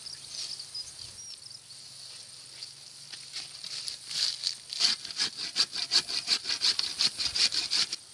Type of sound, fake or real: real